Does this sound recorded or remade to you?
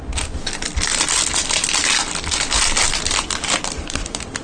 recorded